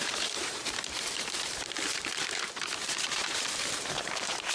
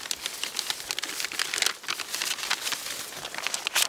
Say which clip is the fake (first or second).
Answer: first